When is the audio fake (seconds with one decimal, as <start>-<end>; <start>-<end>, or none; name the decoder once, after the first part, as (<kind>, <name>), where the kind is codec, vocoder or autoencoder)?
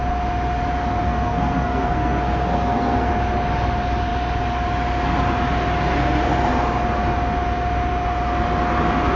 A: 1.0-3.1 (codec, SNAC)